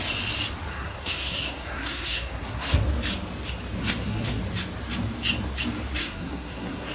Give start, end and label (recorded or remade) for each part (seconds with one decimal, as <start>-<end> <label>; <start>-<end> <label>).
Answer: 0.0-0.7 recorded; 0.7-2.8 remade; 2.8-3.8 recorded; 3.8-4.4 remade; 4.4-6.0 recorded; 6.0-6.9 remade